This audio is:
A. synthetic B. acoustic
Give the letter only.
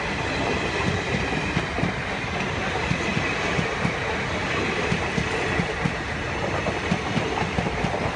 B